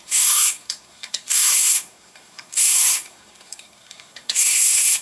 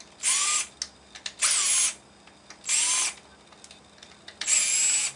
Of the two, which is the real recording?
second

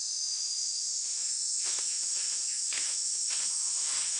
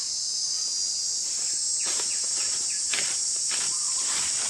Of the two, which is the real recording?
second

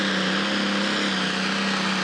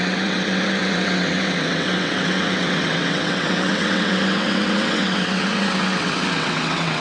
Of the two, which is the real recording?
first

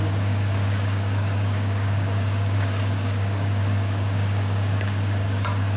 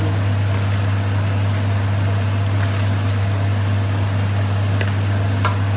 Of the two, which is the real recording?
second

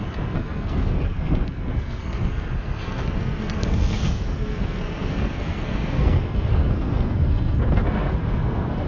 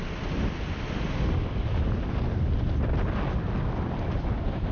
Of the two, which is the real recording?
second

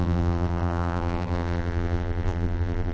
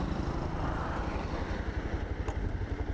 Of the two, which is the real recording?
second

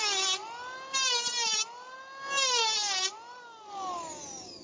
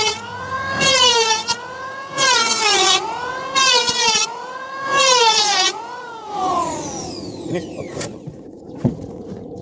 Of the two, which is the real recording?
first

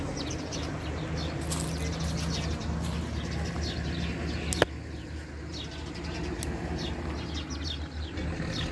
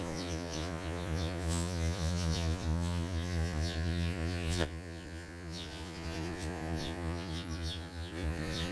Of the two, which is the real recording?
first